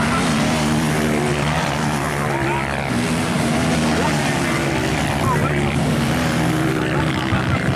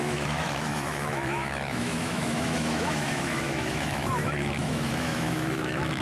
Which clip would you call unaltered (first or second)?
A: first